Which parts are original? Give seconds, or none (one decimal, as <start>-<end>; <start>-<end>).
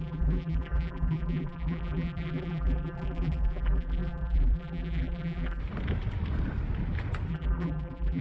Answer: 5.6-7.3